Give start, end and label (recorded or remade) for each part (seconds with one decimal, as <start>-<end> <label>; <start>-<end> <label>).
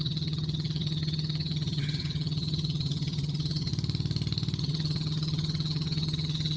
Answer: 0.0-3.7 remade; 3.7-4.6 recorded; 4.6-6.6 remade